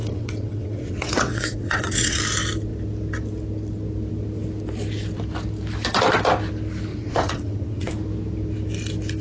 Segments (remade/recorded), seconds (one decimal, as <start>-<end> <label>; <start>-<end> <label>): 0.0-2.2 remade; 2.2-6.9 recorded; 6.9-7.9 remade; 7.9-9.2 recorded